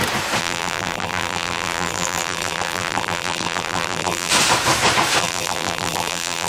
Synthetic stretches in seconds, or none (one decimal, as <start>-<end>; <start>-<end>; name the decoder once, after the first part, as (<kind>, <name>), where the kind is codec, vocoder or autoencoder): 0.4-4.3 (vocoder, BigVGAN v2); 5.2-6.5